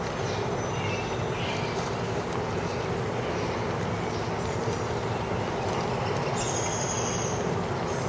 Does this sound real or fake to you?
real